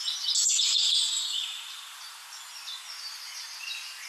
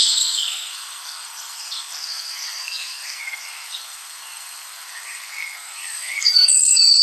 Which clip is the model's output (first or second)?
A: second